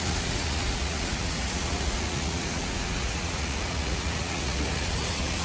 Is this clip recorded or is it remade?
remade